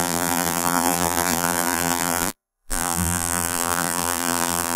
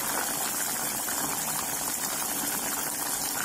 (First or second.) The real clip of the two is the second